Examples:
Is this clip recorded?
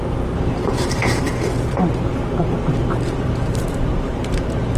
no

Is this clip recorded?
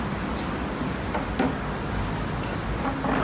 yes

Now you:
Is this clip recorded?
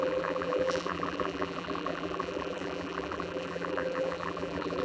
no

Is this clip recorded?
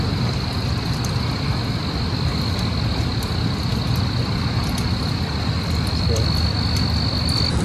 yes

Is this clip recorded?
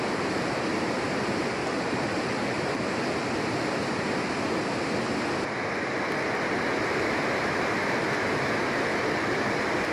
yes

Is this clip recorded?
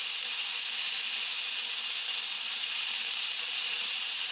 no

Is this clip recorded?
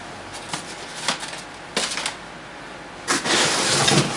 yes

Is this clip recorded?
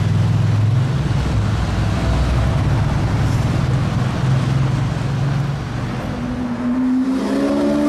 yes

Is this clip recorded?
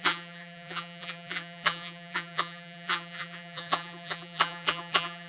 no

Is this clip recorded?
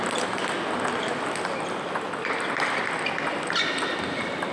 yes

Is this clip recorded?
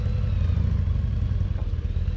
yes